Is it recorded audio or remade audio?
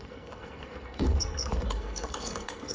remade